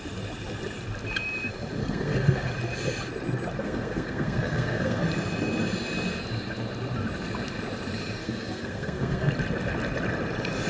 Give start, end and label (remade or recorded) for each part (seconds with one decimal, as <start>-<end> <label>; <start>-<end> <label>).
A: 0.0-1.8 recorded; 1.8-2.5 remade; 2.5-3.6 recorded; 3.6-5.0 remade; 5.0-8.2 recorded; 8.2-9.3 remade; 9.3-10.7 recorded